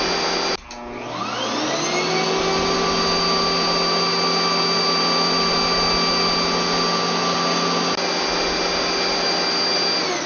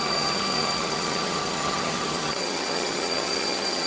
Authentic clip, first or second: first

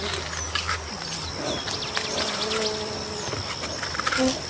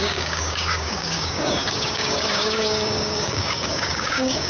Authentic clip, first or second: first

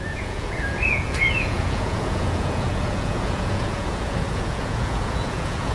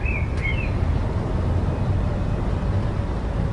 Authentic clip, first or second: second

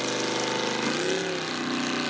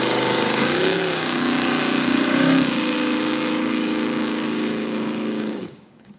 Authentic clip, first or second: first